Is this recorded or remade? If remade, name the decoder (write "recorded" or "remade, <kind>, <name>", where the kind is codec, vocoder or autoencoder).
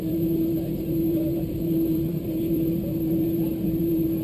remade, vocoder, BigVGAN v2